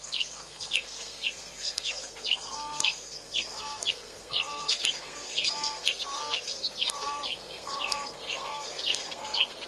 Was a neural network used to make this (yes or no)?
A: yes